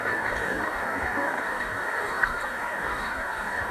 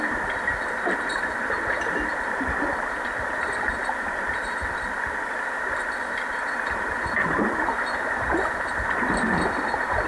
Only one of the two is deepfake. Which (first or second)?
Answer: first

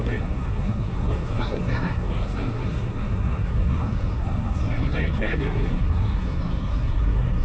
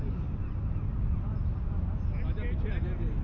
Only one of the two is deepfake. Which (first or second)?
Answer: first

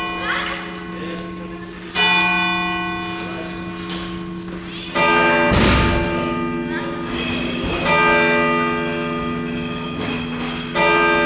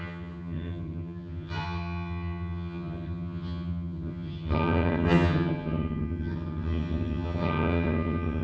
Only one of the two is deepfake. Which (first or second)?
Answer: second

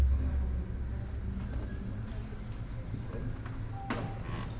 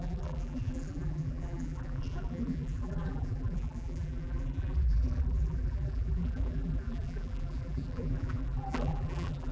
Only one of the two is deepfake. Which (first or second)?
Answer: second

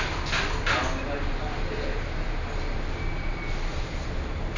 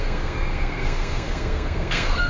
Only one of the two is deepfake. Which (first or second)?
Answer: second